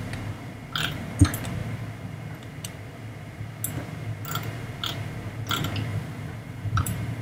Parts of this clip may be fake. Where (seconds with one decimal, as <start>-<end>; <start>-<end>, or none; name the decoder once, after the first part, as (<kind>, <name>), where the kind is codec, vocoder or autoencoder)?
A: 5.9-7.2 (vocoder, BigVGAN v2)